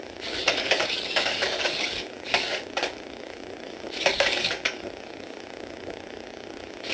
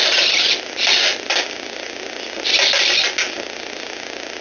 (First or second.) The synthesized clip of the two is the first